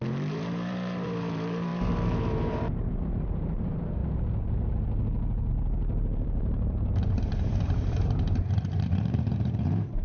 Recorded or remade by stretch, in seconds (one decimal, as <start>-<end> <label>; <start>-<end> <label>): 0.0-4.0 remade; 4.0-5.5 recorded; 5.5-10.0 remade